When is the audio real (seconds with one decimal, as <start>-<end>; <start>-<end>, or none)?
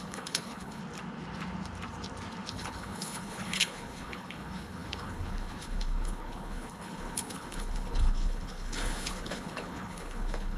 0.8-2.5